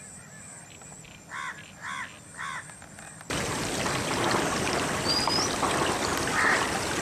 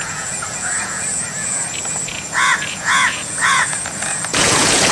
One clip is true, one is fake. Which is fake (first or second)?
second